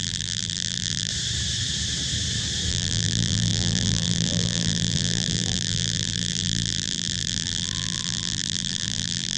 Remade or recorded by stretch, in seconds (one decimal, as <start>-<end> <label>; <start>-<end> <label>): 0.0-1.1 remade; 1.1-2.7 recorded; 2.7-9.4 remade